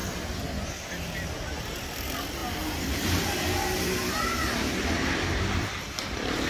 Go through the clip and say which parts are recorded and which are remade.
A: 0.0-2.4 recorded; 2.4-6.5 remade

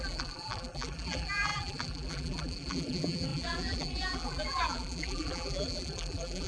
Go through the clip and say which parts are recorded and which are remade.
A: 0.0-6.5 remade